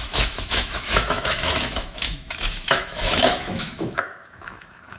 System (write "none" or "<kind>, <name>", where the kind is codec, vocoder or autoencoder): autoencoder, DAC-VAE